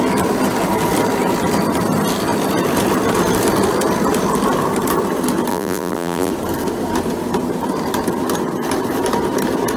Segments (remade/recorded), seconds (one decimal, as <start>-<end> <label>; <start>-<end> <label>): 0.0-5.5 recorded; 5.5-6.3 remade; 6.3-9.8 recorded